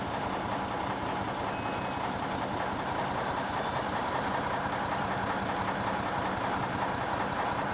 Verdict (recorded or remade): recorded